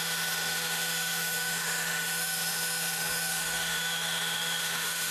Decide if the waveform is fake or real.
fake